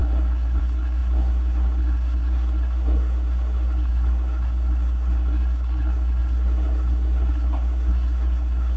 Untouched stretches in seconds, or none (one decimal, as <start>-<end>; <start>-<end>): none